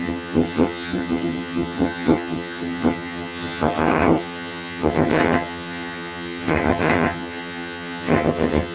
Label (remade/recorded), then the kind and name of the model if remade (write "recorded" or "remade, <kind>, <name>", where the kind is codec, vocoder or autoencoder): remade, vocoder, HiFi-GAN